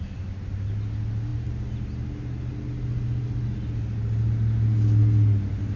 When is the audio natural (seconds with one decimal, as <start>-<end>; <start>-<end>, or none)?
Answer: 0.0-5.8